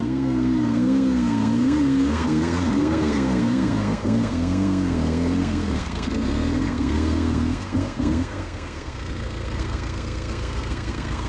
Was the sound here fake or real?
fake